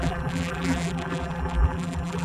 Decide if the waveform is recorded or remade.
remade